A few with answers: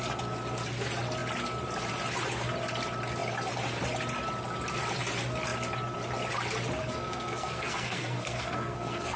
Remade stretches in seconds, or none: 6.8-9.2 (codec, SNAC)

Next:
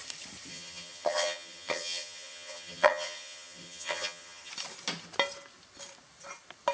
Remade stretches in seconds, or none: 0.5-4.5 (vocoder, HiFi-GAN)

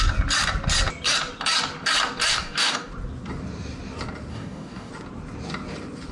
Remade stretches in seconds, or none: 2.3-2.9 (codec, DAC); 4.3-4.9

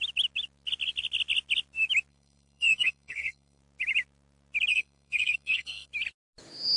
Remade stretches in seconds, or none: 2.1-3.6 (codec, SNAC); 4.7-5.9

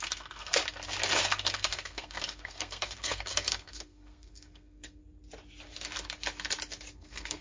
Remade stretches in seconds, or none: 0.0-0.6 (codec, SNAC); 1.2-5.0; 6.9-7.4

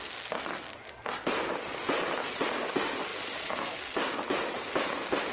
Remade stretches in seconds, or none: none

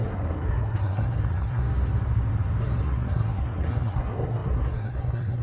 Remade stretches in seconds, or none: 0.0-1.6 (codec, SNAC); 2.8-5.4